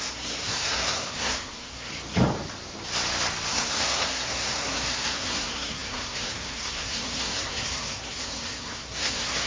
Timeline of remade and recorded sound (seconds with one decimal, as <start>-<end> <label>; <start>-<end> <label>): 0.0-1.9 remade; 1.9-3.5 recorded; 3.5-9.5 remade